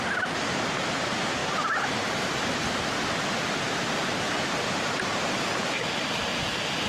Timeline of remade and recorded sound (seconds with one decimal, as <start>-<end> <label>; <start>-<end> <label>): 0.0-6.9 recorded